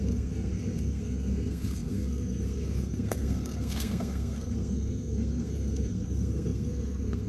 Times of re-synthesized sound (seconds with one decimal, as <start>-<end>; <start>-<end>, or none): 0.0-7.3

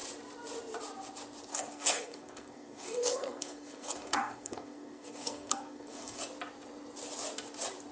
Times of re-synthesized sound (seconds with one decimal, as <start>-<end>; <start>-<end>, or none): 1.5-6.2

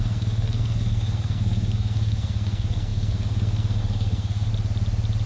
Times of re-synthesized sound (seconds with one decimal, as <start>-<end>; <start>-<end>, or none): 0.0-4.5

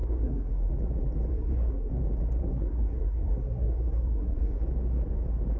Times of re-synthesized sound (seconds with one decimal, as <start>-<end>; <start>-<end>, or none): 0.0-0.7; 1.3-1.9; 2.4-4.6